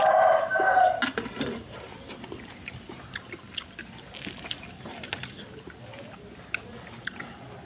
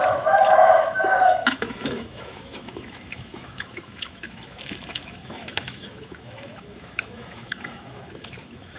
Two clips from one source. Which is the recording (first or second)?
first